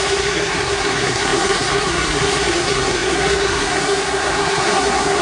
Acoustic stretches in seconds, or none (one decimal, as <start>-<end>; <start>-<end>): none